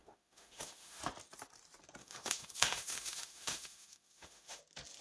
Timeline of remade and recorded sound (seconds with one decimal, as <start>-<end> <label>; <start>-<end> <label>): 0.0-1.0 remade; 1.0-2.0 recorded; 2.0-4.6 remade; 4.6-5.0 recorded

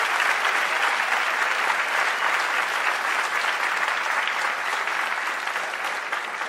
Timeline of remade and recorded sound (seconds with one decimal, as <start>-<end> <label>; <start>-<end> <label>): 0.0-6.5 recorded

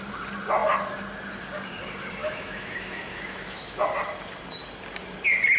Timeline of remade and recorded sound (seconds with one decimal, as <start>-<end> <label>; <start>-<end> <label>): 0.0-2.2 recorded; 2.2-3.8 remade; 3.8-5.6 recorded

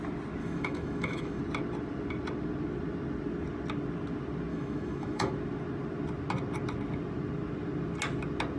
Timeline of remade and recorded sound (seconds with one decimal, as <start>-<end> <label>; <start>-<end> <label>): 0.0-0.4 recorded; 0.4-1.4 remade; 1.4-4.5 recorded; 4.5-5.3 remade; 5.3-8.6 recorded

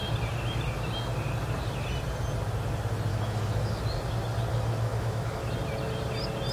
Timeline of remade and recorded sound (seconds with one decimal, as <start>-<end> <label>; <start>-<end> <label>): 0.0-3.1 recorded; 3.1-3.8 remade; 3.8-4.5 recorded; 4.5-5.5 remade; 5.5-6.5 recorded

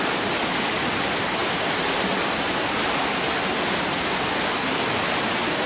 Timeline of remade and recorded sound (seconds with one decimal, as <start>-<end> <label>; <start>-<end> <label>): 0.0-5.7 recorded